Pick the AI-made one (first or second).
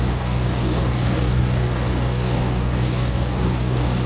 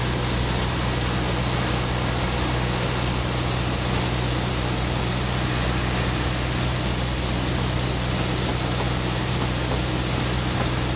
first